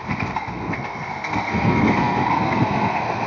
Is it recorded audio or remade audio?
remade